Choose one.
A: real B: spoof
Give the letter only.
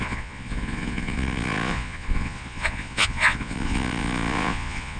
B